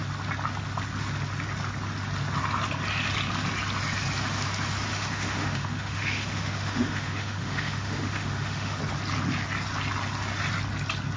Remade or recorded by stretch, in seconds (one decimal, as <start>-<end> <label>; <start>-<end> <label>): 0.0-4.9 recorded; 4.9-8.8 remade; 8.8-11.2 recorded